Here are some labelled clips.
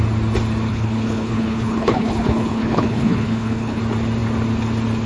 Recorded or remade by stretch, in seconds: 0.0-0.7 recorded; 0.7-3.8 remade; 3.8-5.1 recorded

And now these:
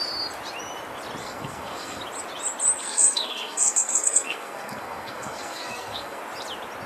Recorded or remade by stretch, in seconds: 0.0-1.2 recorded; 1.2-2.0 remade; 2.0-2.8 recorded; 2.8-6.2 remade; 6.2-6.9 recorded

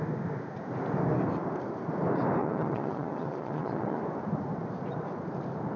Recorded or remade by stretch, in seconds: 0.0-2.4 recorded; 2.4-4.0 remade; 4.0-5.8 recorded

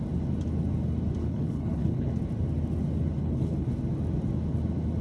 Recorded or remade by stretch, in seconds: 0.0-1.2 recorded; 1.2-2.1 remade; 2.1-3.2 recorded; 3.2-3.8 remade; 3.8-5.0 recorded

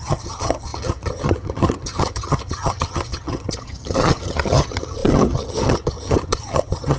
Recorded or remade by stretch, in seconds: 0.0-7.0 remade

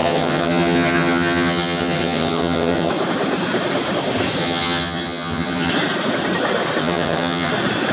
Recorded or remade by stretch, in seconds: 0.0-2.9 remade; 2.9-4.4 recorded; 4.4-5.7 remade; 5.7-6.8 recorded; 6.8-7.5 remade; 7.5-7.9 recorded

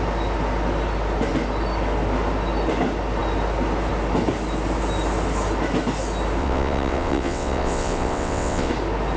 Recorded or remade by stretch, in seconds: 0.0-6.4 recorded; 6.4-8.7 remade; 8.7-9.2 recorded